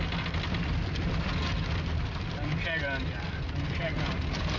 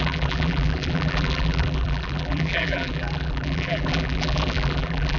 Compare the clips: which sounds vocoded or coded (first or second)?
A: second